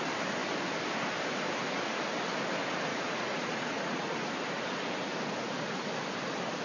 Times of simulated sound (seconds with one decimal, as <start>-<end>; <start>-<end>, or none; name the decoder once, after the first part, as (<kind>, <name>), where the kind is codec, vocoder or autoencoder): 2.9-4.3 (vocoder, Vocos)